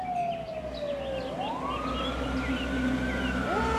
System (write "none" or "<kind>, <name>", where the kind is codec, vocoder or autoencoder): none